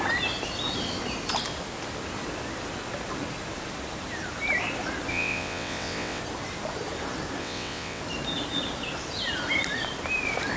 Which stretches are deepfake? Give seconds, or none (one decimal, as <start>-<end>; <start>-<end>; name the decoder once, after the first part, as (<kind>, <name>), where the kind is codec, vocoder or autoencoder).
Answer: 5.1-6.2 (vocoder, WaveNeXt); 7.4-8.0